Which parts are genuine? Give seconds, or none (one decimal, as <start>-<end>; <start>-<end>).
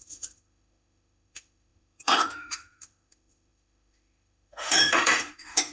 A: none